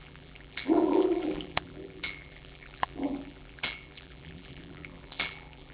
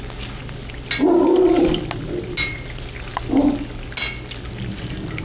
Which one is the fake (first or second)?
first